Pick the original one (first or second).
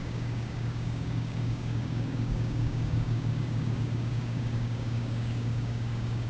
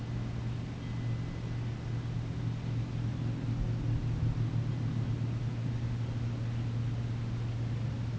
second